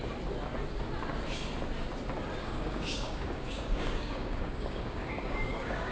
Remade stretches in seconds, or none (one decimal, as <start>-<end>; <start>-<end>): 2.4-5.9